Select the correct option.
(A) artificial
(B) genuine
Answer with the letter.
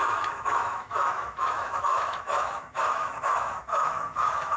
A